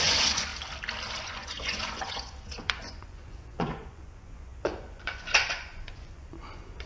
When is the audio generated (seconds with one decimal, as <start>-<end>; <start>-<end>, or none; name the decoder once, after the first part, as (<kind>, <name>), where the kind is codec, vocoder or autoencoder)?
0.0-0.5 (vocoder, Vocos); 1.2-6.9